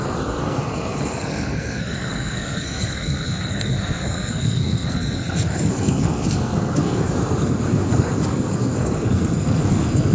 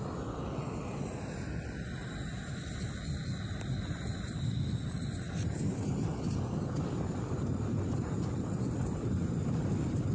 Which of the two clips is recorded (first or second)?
second